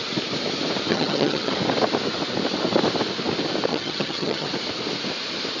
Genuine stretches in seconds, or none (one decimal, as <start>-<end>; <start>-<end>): 0.0-0.9; 1.5-3.7; 4.5-5.6